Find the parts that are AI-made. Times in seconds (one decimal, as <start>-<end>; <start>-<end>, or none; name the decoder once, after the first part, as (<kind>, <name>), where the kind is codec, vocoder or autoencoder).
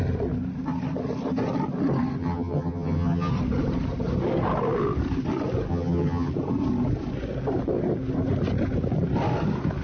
2.2-3.3 (vocoder, HiFi-GAN); 5.7-6.3